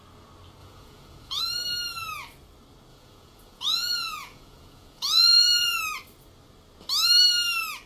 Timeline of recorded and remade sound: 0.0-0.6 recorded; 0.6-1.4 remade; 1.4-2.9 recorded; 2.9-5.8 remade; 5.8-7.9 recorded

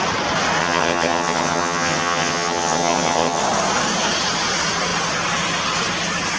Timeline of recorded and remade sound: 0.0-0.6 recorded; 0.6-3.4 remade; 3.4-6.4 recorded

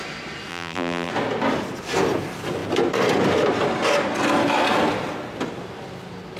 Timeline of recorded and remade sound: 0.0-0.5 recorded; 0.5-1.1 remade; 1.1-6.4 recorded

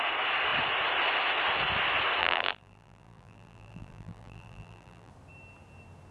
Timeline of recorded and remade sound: 0.0-2.2 recorded; 2.2-5.1 remade; 5.1-6.1 recorded

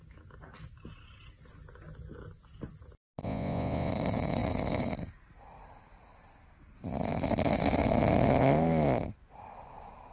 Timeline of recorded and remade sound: 0.0-3.2 recorded; 3.2-3.9 remade; 3.9-10.1 recorded